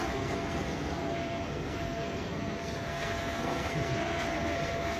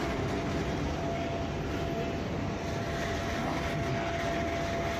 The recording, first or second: second